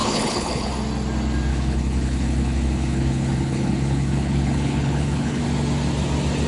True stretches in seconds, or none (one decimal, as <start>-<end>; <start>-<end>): 0.7-1.5; 5.4-6.5